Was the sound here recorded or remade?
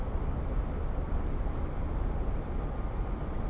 recorded